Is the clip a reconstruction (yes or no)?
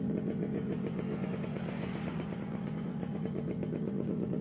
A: yes